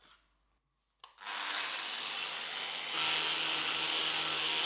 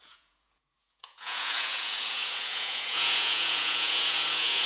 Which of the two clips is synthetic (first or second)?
second